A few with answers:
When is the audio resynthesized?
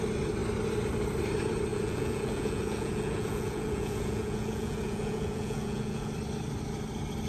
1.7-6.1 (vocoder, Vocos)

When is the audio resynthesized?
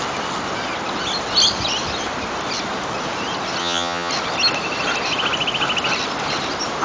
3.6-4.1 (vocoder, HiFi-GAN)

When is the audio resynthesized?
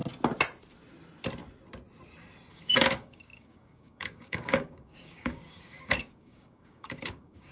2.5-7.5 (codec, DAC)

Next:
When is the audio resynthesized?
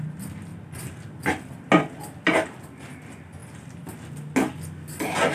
none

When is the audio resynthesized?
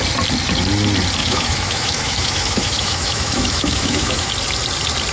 1.2-4.3 (autoencoder, DAC-VAE)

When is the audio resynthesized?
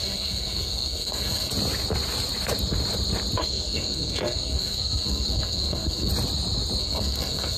0.0-1.5 (codec, SNAC); 3.4-6.1; 6.8-7.6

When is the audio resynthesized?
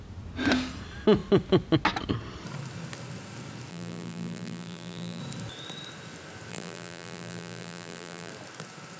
3.7-5.2 (vocoder, BigVGAN v2); 6.5-8.3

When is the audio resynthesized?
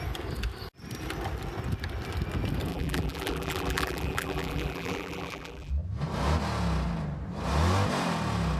2.7-5.7 (vocoder, BigVGAN v2)